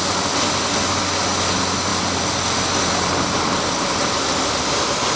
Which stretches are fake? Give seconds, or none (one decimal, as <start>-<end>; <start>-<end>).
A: none